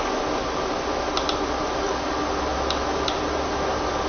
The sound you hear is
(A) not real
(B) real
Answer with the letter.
B